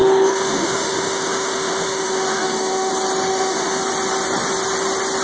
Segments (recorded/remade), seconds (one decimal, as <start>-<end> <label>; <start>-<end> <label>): 0.0-2.9 remade; 2.9-3.3 recorded; 3.3-3.8 remade; 3.8-5.2 recorded